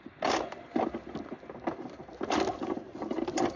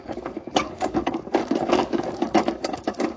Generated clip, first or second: second